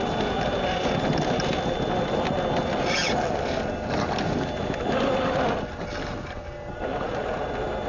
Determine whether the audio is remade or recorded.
recorded